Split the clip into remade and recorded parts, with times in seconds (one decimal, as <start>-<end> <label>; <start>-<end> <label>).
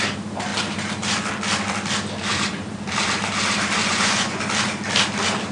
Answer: 0.0-3.8 recorded; 3.8-4.4 remade; 4.4-5.5 recorded